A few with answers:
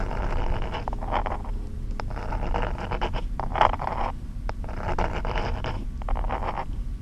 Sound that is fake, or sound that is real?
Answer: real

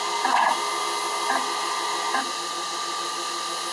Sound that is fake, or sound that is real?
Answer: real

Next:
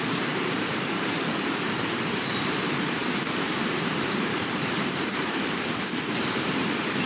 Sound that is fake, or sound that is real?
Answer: fake